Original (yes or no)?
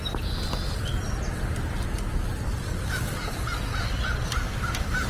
yes